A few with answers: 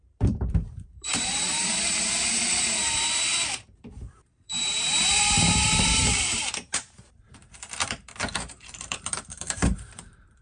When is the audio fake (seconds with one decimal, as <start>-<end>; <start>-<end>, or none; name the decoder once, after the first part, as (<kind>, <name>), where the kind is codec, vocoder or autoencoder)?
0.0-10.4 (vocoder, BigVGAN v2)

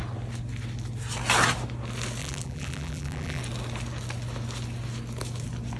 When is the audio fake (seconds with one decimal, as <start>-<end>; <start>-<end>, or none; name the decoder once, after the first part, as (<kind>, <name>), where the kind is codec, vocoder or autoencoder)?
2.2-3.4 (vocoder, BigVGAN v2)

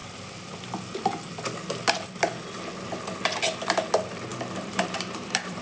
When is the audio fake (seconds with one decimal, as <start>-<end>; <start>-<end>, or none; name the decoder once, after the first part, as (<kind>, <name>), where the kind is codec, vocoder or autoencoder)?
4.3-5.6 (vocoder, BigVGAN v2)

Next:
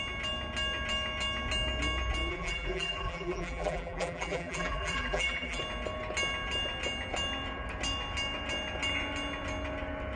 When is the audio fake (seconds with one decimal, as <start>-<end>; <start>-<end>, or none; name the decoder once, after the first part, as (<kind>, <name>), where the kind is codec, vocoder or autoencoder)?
2.3-5.6 (vocoder, BigVGAN v2)

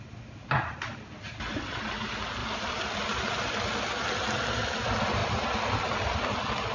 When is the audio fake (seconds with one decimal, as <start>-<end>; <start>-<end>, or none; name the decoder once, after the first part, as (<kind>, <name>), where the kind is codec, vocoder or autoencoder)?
2.4-3.3 (vocoder, BigVGAN v2); 5.2-6.2

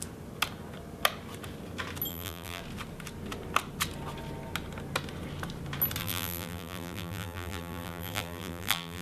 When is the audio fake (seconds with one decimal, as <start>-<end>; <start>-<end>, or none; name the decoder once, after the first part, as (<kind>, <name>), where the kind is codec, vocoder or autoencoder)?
2.1-2.6 (vocoder, BigVGAN v2); 6.0-9.0

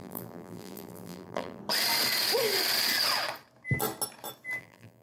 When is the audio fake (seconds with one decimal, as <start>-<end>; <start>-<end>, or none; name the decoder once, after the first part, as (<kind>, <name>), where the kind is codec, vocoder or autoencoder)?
0.0-1.6 (vocoder, BigVGAN v2); 4.6-5.0

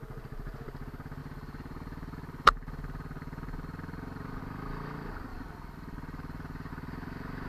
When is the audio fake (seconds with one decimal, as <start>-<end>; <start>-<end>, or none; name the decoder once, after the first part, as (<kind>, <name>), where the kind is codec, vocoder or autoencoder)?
1.2-4.4 (vocoder, BigVGAN v2); 5.3-6.7